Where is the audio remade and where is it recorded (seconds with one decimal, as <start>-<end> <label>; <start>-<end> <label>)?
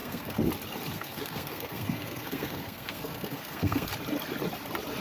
0.0-0.5 remade; 0.5-0.9 recorded; 0.9-3.9 remade; 3.9-5.0 recorded